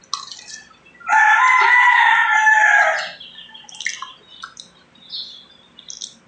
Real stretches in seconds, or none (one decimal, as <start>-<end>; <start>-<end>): 0.0-6.3